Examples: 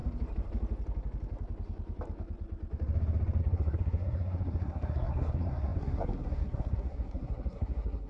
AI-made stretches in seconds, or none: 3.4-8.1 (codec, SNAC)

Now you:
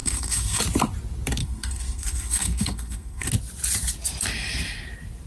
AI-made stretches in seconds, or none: 0.0-0.6 (codec, SNAC); 1.4-3.3

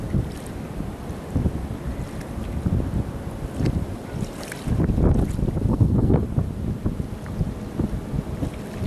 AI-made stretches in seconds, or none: 5.7-6.2 (codec, SNAC)

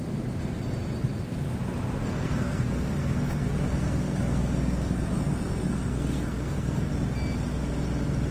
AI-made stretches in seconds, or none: 2.0-6.9 (codec, SNAC)

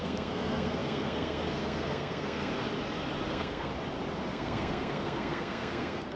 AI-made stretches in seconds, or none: 0.0-2.5 (codec, SNAC); 3.3-3.7; 4.3-6.2